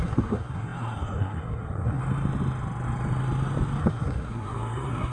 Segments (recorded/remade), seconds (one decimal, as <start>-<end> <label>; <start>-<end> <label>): 0.0-2.0 remade; 2.0-3.8 recorded; 3.8-5.1 remade